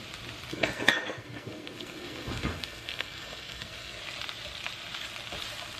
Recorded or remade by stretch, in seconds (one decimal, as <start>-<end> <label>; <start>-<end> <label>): 0.0-0.5 recorded; 0.5-4.0 remade; 4.0-5.8 recorded